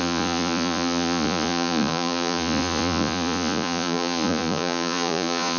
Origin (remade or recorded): remade